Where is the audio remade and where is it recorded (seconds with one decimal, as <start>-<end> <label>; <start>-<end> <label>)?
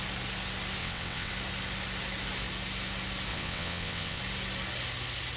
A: 0.0-0.8 recorded; 0.8-1.3 remade; 1.3-3.3 recorded; 3.3-4.2 remade; 4.2-5.4 recorded